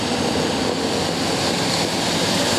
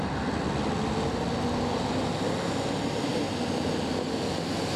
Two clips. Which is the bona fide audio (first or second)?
second